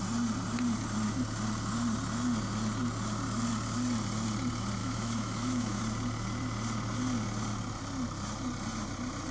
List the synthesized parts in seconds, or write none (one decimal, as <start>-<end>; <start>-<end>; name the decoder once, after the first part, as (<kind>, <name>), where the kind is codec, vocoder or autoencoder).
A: 4.8-5.8 (autoencoder, DAC-VAE)